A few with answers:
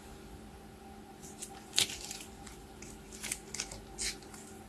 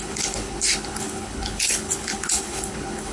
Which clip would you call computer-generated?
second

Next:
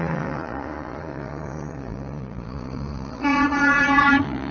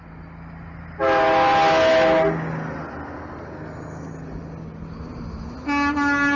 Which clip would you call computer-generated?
first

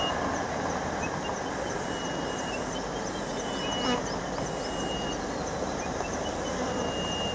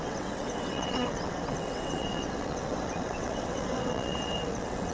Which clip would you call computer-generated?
second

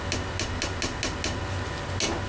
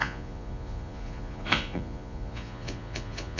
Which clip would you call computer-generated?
second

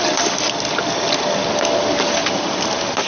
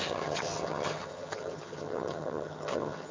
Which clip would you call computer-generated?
second